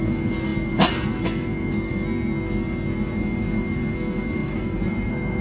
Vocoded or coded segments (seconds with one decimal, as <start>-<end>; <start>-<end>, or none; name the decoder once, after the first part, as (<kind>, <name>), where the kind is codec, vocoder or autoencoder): 0.0-5.4 (codec, SNAC)